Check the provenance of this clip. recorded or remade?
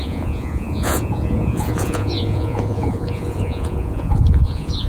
remade